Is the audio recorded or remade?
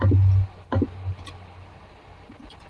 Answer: recorded